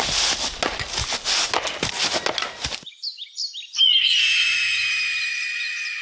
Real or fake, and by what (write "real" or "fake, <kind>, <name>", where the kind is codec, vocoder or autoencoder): real